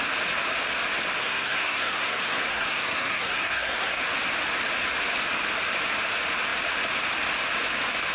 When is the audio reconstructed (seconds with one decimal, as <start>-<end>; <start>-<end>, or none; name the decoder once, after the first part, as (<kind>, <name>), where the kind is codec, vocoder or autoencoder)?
1.2-4.0 (codec, SNAC)